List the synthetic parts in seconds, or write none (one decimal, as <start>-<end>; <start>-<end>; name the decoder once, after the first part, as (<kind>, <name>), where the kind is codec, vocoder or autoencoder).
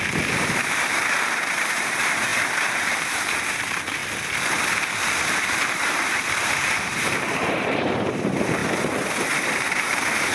0.0-4.0 (vocoder, BigVGAN v2); 5.3-8.6; 9.4-10.3